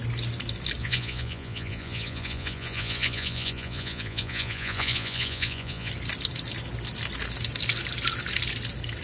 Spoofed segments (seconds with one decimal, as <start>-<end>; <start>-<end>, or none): 0.8-5.9